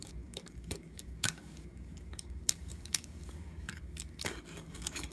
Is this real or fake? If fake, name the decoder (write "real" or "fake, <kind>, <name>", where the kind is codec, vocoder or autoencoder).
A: fake, codec, DAC